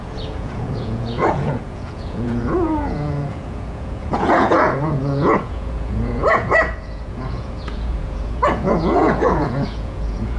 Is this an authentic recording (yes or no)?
no